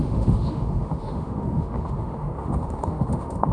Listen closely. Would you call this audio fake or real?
fake